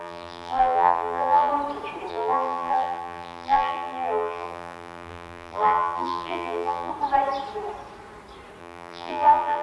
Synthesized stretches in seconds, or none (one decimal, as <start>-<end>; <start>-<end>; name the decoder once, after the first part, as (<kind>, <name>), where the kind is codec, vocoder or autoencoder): 0.0-1.5 (vocoder, BigVGAN v2); 2.1-6.9; 8.6-9.6